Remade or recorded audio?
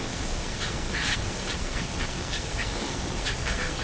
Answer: remade